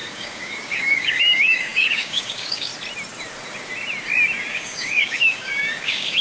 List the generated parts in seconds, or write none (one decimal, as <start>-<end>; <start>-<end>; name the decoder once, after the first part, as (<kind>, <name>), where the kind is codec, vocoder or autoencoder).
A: 0.0-2.7 (codec, DAC); 4.5-6.2